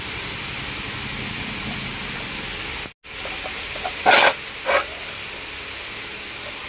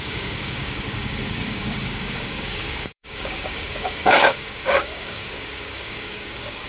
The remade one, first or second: second